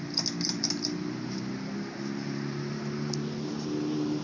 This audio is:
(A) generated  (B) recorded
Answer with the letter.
B